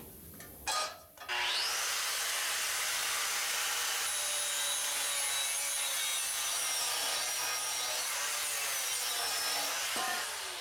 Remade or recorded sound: recorded